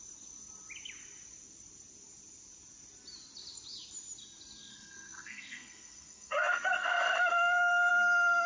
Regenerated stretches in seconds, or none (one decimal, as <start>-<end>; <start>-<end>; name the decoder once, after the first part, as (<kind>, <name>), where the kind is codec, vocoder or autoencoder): 4.7-7.9 (codec, SNAC)